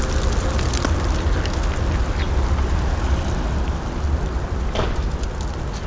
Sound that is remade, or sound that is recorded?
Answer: recorded